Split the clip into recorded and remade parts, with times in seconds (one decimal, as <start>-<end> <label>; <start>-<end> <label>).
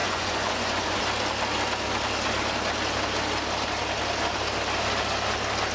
0.0-1.0 remade; 1.0-5.7 recorded